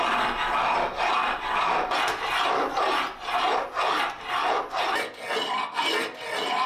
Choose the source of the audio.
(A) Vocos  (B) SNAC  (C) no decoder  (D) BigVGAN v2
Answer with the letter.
C